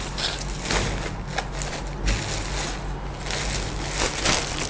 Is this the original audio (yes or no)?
yes